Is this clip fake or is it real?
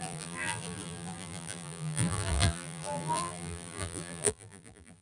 fake